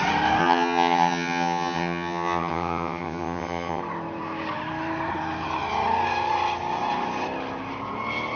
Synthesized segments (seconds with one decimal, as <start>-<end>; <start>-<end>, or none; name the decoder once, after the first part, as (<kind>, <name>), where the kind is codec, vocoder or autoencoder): 0.4-3.8 (vocoder, HiFi-GAN)